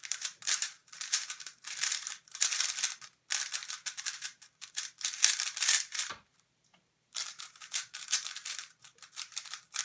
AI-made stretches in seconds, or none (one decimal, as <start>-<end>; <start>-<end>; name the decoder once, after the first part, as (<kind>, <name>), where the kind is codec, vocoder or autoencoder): 0.0-2.5 (vocoder, BigVGAN v2); 4.0-9.8